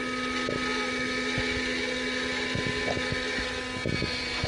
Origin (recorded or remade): recorded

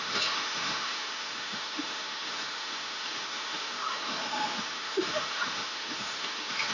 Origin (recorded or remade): remade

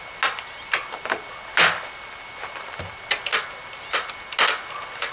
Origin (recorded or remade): recorded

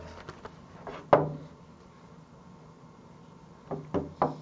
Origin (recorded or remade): recorded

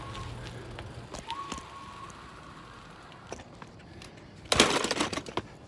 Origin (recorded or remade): recorded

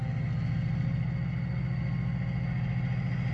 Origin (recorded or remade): recorded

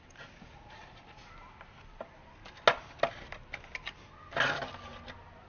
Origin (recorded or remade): recorded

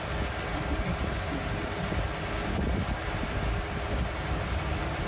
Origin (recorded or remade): recorded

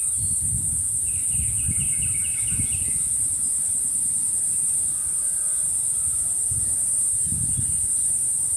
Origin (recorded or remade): recorded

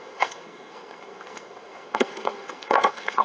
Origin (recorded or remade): remade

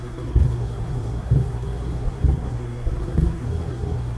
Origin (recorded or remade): remade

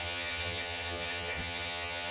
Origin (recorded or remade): remade